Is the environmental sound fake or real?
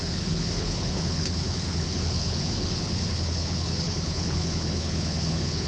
fake